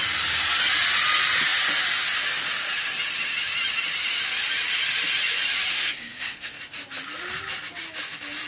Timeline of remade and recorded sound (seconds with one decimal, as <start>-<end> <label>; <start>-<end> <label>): 0.0-5.7 recorded; 5.7-6.6 remade; 6.6-8.5 recorded